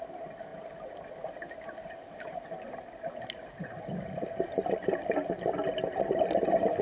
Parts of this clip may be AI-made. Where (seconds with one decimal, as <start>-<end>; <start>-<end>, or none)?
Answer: none